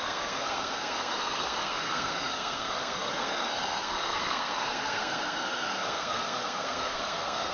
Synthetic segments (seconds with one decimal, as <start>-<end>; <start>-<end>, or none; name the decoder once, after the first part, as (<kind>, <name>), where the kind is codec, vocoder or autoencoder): 0.0-7.5 (codec, SNAC)